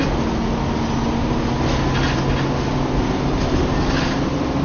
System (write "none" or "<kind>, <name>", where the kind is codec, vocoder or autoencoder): none